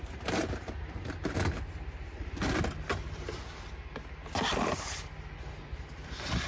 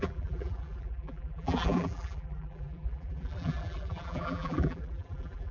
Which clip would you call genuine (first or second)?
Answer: first